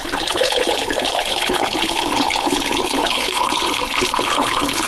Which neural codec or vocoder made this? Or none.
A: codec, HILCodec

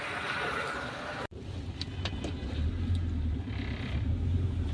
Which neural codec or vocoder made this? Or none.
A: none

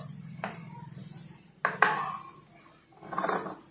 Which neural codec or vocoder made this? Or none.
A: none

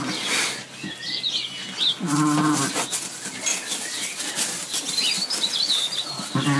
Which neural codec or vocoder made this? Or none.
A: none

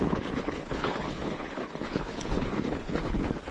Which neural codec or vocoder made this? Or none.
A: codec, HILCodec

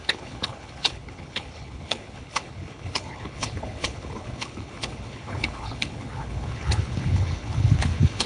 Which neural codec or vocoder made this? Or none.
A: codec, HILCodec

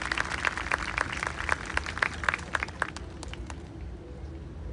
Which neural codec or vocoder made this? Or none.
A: none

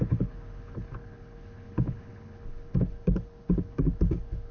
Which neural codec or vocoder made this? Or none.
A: codec, HILCodec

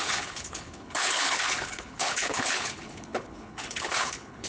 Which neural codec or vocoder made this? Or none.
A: codec, HILCodec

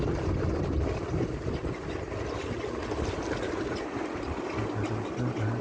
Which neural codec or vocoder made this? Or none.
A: none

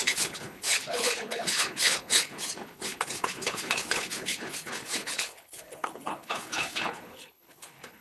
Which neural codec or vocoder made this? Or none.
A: codec, HILCodec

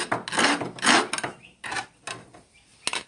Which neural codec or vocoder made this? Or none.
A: none